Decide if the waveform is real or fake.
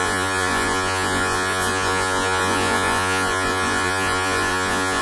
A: fake